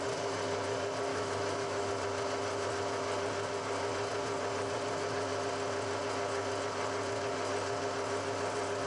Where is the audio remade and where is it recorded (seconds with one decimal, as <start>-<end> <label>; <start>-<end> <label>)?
0.0-1.1 recorded; 1.1-1.9 remade; 1.9-8.9 recorded

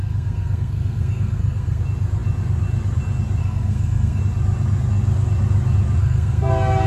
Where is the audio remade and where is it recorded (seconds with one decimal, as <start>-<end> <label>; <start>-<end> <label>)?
0.0-1.8 remade; 1.8-3.4 recorded; 3.4-4.2 remade; 4.2-6.0 recorded; 6.0-6.5 remade; 6.5-6.9 recorded

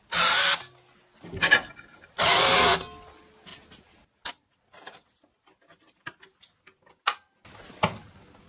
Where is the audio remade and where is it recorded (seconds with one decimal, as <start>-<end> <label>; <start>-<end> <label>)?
0.0-8.5 recorded

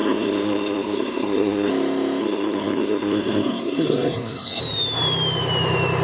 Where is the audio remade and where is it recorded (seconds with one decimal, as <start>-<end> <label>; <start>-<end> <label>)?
0.0-1.7 remade; 1.7-2.2 recorded; 2.2-4.6 remade; 4.6-6.0 recorded